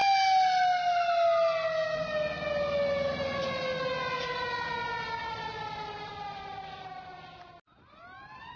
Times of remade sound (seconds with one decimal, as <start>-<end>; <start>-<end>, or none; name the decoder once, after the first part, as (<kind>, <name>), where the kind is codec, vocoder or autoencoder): none